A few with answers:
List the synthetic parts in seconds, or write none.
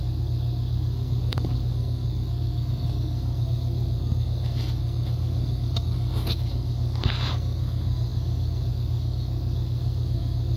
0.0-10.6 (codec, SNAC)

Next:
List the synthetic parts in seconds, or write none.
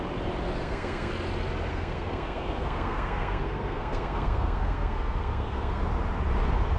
0.6-1.1 (codec, SNAC); 1.7-5.8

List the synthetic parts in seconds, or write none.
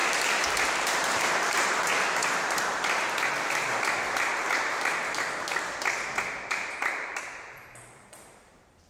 0.6-2.2 (vocoder, BigVGAN v2); 6.4-8.9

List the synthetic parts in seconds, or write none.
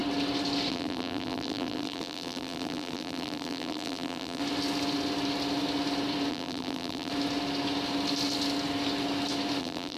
0.7-4.4 (vocoder, BigVGAN v2); 6.3-7.1; 9.6-10.0